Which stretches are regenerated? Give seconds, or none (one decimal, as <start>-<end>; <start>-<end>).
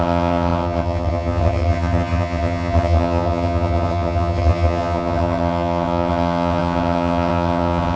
0.0-8.0